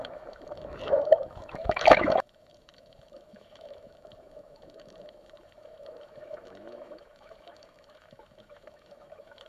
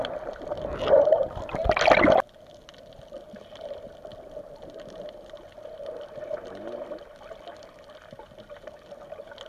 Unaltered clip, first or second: second